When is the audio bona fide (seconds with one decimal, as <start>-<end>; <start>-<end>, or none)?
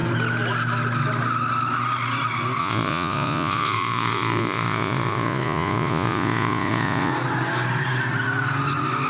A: 0.0-2.6; 7.1-9.1